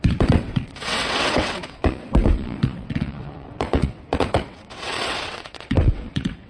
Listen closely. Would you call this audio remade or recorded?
remade